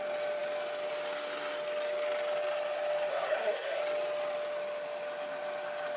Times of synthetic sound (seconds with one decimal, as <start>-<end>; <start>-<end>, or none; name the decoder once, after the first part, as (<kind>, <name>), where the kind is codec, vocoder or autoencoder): 3.1-3.8 (codec, SNAC)